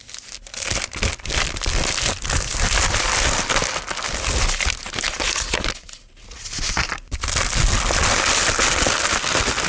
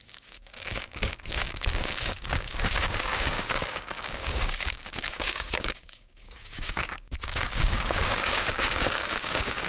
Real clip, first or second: first